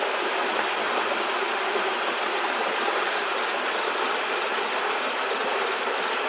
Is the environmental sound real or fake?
real